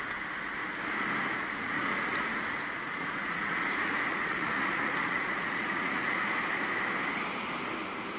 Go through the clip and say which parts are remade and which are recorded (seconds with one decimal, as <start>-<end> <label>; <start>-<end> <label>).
0.0-1.3 recorded; 1.3-6.2 remade; 6.2-8.2 recorded